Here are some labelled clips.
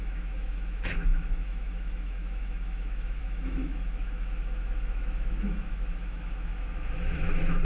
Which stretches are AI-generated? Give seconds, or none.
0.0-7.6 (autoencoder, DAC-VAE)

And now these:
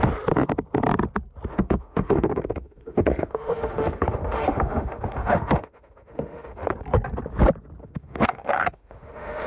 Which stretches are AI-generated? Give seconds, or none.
1.5-6.7 (autoencoder, DAC-VAE); 7.8-9.5

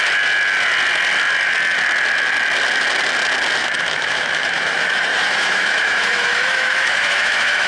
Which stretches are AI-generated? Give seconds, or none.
3.6-7.7 (autoencoder, DAC-VAE)

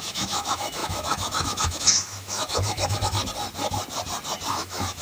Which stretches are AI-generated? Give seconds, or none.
0.0-3.2 (autoencoder, DAC-VAE); 4.5-5.0

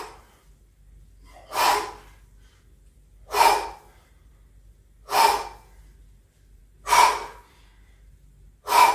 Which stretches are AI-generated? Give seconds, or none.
none

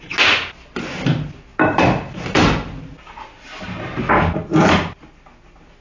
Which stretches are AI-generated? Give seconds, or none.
none

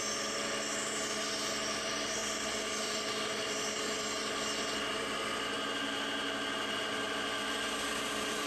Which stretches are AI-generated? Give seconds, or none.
none